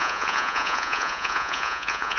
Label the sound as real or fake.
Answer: fake